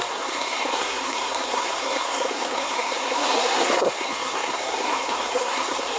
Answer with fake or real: fake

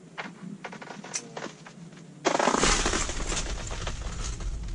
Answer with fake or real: real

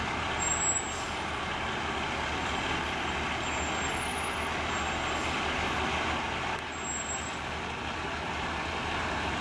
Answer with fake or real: real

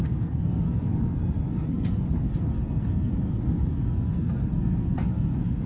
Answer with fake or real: fake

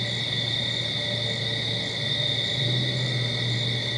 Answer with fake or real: real